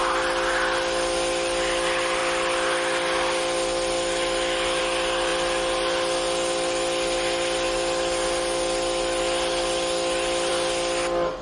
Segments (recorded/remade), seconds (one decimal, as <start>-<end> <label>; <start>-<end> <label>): 0.0-11.4 recorded